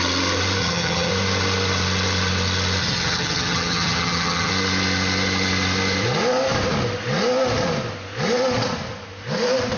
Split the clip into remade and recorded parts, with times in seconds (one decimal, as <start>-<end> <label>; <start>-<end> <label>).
0.0-0.6 recorded; 0.6-1.1 remade; 1.1-2.8 recorded; 2.8-4.5 remade; 4.5-9.8 recorded